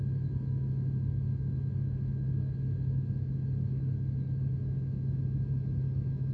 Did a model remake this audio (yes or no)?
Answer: yes